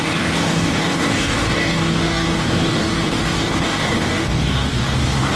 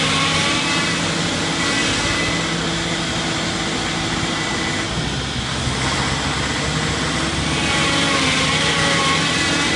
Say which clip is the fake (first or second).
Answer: first